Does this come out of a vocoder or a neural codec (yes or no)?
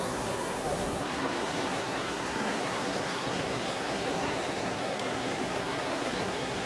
yes